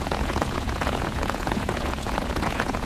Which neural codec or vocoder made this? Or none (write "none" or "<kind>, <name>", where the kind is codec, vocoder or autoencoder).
vocoder, Vocos